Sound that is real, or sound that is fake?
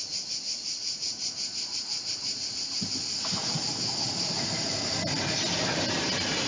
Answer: real